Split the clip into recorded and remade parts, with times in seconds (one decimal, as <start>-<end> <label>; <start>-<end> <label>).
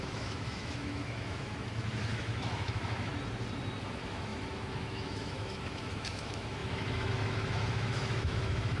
0.0-3.1 remade; 3.1-3.8 recorded; 3.8-8.8 remade